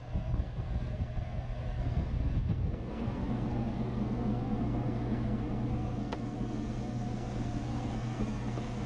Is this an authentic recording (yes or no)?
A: no